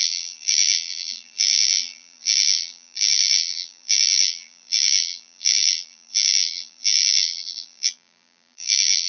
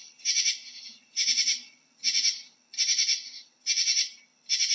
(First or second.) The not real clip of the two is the first